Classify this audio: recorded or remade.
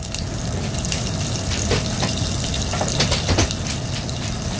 recorded